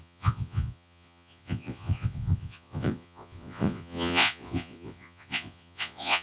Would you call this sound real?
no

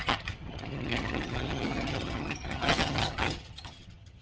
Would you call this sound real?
no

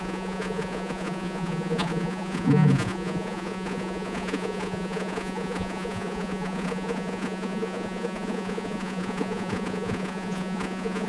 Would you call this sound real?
no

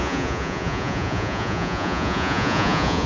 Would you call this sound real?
no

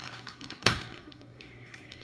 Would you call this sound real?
no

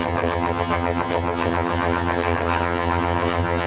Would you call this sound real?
no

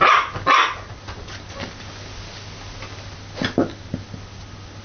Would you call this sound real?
yes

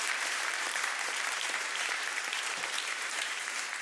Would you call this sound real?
no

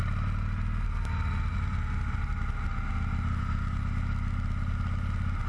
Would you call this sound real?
yes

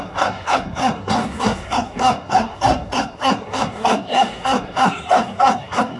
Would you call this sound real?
no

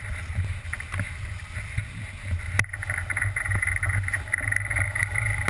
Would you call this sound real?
yes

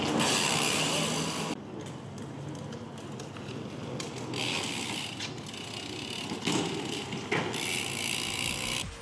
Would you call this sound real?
yes